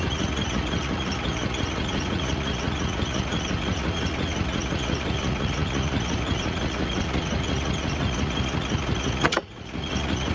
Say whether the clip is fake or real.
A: fake